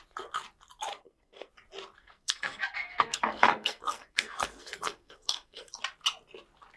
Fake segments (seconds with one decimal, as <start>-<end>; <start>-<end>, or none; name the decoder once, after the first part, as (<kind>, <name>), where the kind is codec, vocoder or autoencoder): 0.9-1.5 (codec, SNAC); 2.0-5.7